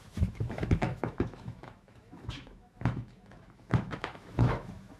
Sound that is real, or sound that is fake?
fake